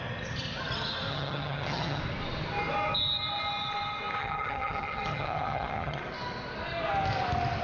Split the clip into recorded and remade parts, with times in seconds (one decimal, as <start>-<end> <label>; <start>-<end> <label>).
0.0-1.1 recorded; 1.1-2.0 remade; 2.0-4.2 recorded; 4.2-6.0 remade; 6.0-7.6 recorded